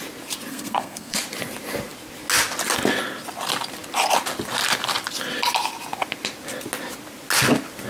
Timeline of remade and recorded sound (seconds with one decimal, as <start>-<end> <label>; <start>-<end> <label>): 0.0-0.5 recorded; 0.5-1.2 remade; 1.2-7.9 recorded